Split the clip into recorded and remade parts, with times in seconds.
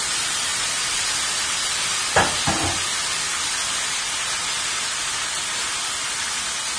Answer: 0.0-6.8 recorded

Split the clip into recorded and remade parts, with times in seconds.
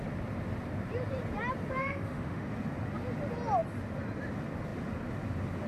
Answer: 0.0-1.8 recorded; 1.8-2.5 remade; 2.5-5.7 recorded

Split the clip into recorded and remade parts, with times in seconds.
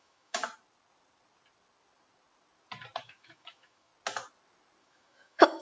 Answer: 0.0-0.4 remade; 0.4-3.0 recorded; 3.0-3.9 remade; 3.9-4.8 recorded; 4.8-5.6 remade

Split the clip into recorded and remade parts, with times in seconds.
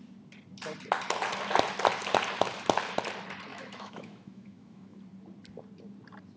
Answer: 0.0-3.5 recorded; 3.5-5.0 remade; 5.0-6.4 recorded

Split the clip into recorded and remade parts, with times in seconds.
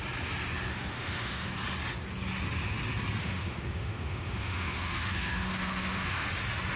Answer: 0.0-0.7 recorded; 0.7-1.5 remade; 1.5-3.2 recorded; 3.2-6.3 remade; 6.3-6.8 recorded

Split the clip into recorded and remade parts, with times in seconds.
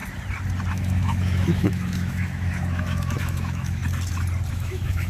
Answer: 0.0-0.7 recorded; 0.7-3.8 remade; 3.8-4.5 recorded; 4.5-5.1 remade